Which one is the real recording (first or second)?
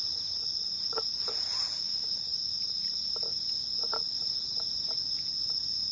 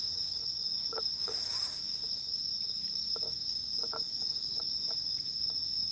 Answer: first